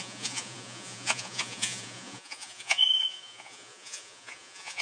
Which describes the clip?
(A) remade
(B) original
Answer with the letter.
A